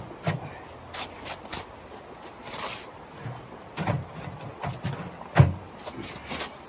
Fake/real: real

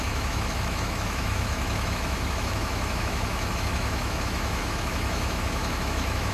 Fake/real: fake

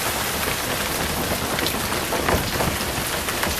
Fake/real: real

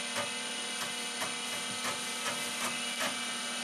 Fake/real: real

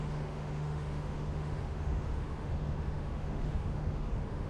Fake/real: fake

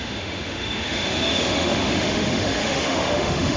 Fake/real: fake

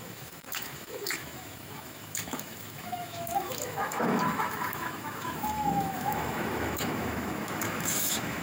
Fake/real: fake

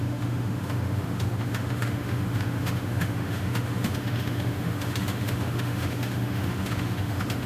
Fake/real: fake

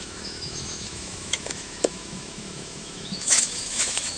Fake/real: fake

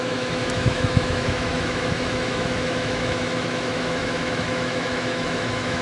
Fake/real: fake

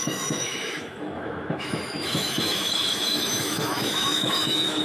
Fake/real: fake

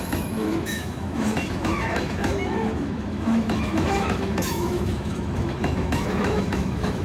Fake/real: fake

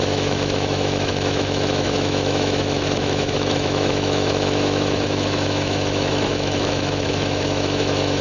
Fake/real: fake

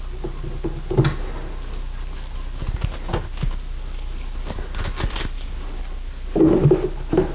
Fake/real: real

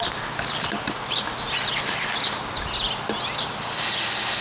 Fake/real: real